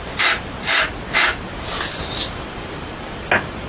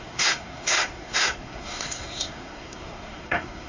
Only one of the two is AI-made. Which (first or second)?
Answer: second